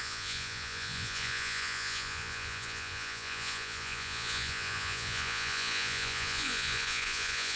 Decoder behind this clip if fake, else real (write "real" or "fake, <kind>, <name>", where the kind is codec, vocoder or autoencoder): fake, vocoder, Vocos